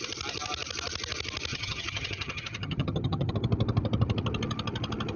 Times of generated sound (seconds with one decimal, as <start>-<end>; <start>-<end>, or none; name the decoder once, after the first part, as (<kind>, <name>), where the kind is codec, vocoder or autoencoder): 1.5-3.3 (vocoder, HiFi-GAN)